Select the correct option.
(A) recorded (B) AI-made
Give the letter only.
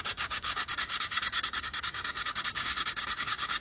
B